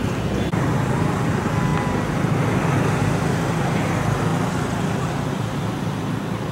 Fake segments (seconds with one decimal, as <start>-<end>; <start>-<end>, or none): 1.7-2.9; 4.3-5.4